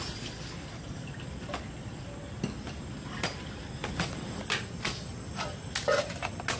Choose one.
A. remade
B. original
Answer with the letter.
B